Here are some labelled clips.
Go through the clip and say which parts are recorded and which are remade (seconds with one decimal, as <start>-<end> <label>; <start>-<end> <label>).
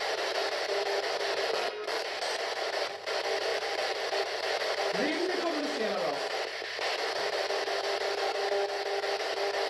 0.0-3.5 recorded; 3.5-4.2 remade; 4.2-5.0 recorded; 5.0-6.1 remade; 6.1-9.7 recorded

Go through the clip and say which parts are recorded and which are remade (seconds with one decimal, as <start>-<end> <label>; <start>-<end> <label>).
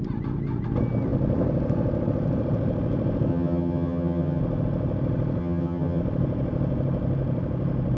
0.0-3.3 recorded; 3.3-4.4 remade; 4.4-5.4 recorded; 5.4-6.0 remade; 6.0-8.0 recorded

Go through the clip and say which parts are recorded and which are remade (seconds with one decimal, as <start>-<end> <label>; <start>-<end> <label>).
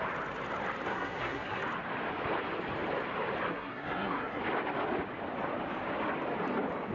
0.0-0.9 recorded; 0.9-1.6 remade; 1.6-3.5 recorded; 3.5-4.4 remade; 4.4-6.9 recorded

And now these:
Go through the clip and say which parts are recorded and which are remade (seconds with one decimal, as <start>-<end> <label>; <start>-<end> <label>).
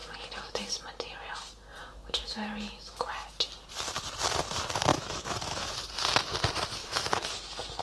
0.0-1.8 recorded; 1.8-3.1 remade; 3.1-4.9 recorded; 4.9-5.7 remade; 5.7-6.8 recorded; 6.8-7.3 remade; 7.3-7.8 recorded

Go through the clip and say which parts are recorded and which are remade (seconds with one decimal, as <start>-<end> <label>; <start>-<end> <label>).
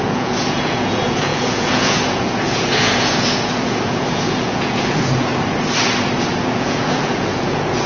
0.0-5.3 remade; 5.3-6.4 recorded; 6.4-7.9 remade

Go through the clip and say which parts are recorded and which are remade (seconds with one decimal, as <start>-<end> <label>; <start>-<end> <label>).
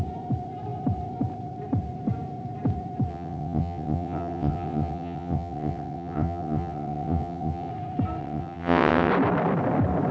0.0-3.1 recorded; 3.1-7.7 remade; 7.7-8.2 recorded; 8.2-9.1 remade; 9.1-10.1 recorded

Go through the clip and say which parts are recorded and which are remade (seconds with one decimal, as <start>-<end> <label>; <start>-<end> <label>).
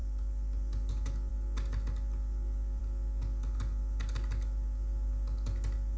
0.0-6.0 recorded